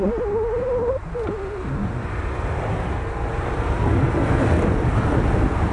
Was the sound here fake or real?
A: real